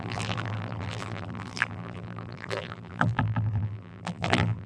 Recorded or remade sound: remade